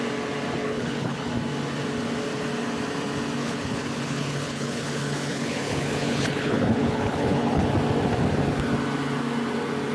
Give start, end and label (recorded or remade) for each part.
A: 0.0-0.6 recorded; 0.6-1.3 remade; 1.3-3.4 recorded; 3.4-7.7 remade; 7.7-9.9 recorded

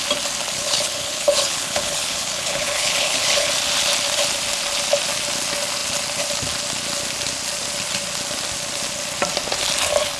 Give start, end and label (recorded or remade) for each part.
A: 0.0-0.4 recorded; 0.4-3.5 remade; 3.5-10.2 recorded

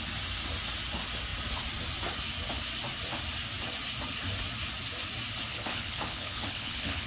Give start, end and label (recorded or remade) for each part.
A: 0.0-5.5 recorded; 5.5-7.1 remade

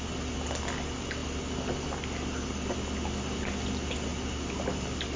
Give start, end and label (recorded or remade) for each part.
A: 0.0-5.2 recorded

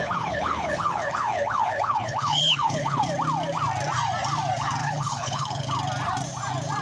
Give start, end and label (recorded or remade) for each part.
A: 0.0-3.0 remade; 3.0-4.8 recorded; 4.8-5.7 remade; 5.7-6.8 recorded

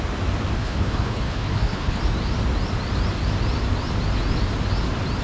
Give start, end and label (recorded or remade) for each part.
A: 0.0-0.6 recorded; 0.6-2.0 remade; 2.0-5.2 recorded

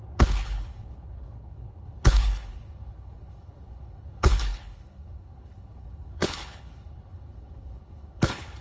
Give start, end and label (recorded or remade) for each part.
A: 0.0-8.6 remade

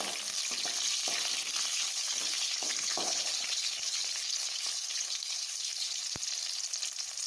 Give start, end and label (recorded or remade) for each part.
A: 0.0-1.7 recorded; 1.7-6.0 remade; 6.0-7.3 recorded